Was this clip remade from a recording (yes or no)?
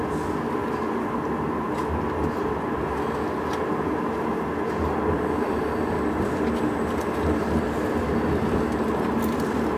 no